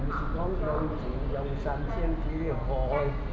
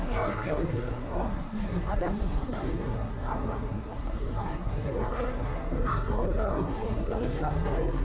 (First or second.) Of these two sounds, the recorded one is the first